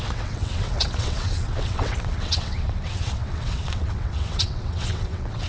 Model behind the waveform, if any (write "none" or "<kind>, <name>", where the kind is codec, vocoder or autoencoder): vocoder, WaveNeXt